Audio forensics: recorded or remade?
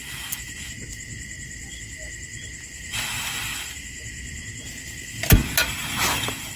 recorded